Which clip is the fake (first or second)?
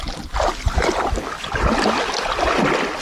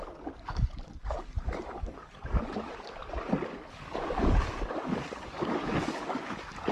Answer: second